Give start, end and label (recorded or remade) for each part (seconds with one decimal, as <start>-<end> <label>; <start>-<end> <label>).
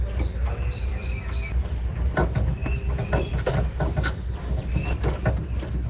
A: 0.0-5.9 recorded